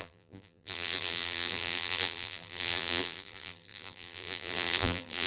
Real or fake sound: fake